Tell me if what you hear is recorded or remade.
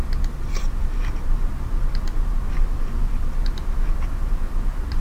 recorded